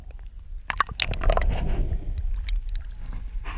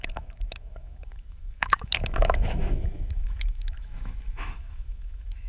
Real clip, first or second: first